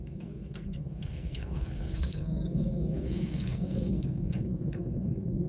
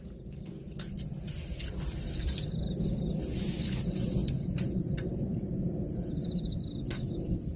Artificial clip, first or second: first